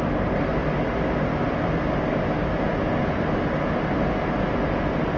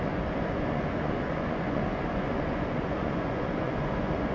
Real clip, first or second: first